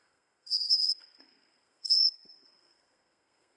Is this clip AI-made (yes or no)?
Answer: yes